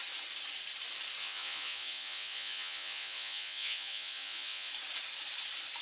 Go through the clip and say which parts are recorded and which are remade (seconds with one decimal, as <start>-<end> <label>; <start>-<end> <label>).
0.0-1.2 recorded; 1.2-4.7 remade; 4.7-5.8 recorded